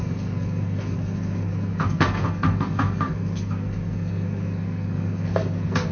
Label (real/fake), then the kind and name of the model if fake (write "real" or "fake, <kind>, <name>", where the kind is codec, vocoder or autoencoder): fake, codec, SNAC